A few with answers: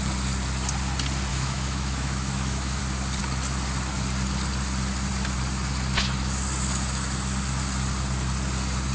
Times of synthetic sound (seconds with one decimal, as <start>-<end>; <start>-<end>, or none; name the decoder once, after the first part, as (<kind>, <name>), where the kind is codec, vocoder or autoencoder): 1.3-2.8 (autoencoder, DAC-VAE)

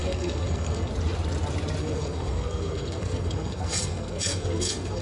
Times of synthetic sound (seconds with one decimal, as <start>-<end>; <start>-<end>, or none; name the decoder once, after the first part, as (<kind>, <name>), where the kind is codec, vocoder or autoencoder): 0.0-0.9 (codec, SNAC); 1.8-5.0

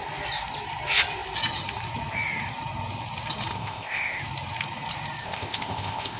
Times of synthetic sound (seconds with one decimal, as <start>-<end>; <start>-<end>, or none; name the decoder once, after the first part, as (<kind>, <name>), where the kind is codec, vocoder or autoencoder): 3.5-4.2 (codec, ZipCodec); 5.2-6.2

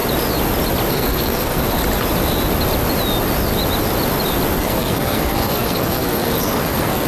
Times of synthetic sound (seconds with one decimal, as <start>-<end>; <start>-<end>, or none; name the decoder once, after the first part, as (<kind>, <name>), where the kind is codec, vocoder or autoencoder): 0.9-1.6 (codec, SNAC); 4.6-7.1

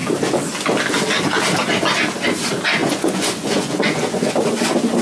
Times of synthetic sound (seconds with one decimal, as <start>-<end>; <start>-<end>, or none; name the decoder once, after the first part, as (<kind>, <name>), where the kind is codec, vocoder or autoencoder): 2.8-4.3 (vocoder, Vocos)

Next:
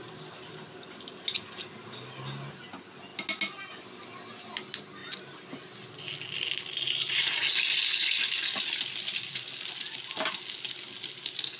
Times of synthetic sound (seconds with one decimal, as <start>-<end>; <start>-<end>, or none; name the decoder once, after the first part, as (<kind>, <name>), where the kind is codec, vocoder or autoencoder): none

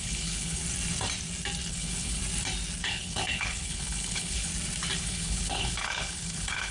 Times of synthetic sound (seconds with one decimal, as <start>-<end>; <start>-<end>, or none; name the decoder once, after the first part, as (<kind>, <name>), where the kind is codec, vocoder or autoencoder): 0.0-0.6 (codec, HILCodec); 1.7-2.2; 2.8-4.5; 5.0-6.7